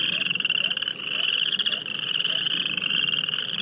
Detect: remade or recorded recorded